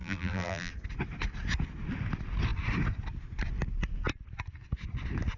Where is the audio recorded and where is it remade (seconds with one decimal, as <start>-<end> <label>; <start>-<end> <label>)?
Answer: 0.0-0.7 remade; 0.7-5.4 recorded